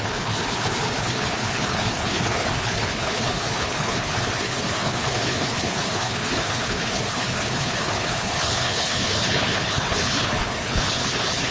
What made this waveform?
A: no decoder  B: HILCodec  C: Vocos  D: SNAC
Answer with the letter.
B